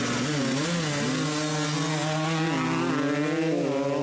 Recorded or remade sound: recorded